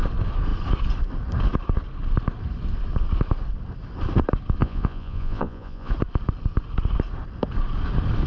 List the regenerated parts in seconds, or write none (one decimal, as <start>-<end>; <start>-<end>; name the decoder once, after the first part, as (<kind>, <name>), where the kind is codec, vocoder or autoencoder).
4.6-5.9 (vocoder, Vocos)